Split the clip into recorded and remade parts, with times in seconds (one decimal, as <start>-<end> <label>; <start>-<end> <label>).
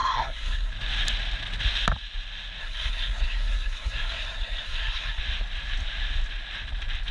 0.0-0.7 remade; 0.7-2.6 recorded; 2.6-5.2 remade; 5.2-7.1 recorded